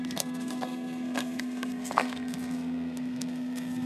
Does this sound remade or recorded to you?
remade